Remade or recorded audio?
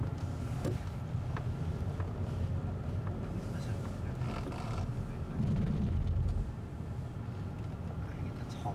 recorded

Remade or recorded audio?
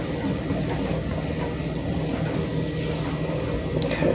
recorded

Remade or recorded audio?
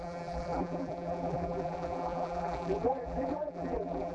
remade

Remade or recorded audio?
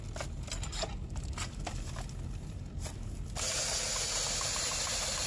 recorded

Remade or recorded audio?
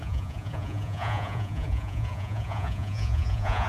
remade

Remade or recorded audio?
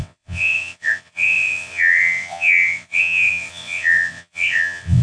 remade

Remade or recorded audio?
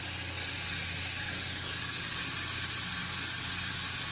recorded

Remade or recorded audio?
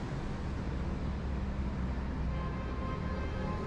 recorded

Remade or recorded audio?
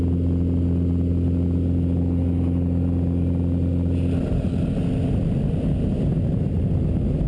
recorded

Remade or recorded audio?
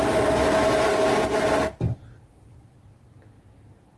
recorded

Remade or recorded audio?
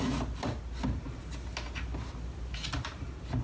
recorded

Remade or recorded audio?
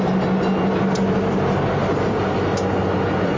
recorded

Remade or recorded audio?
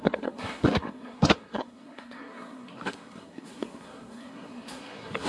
remade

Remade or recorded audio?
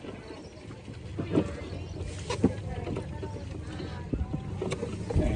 recorded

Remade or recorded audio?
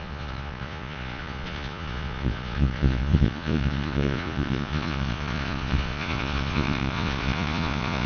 remade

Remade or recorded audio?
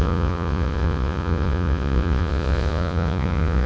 remade